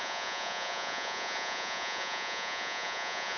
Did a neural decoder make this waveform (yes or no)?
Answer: yes